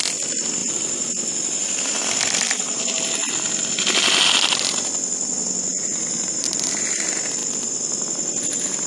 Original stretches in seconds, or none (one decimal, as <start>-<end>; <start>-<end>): 0.0-0.6; 3.3-5.7; 6.5-8.9